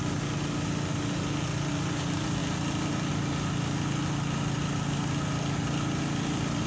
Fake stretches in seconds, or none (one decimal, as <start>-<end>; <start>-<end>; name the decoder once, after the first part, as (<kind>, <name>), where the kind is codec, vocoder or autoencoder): none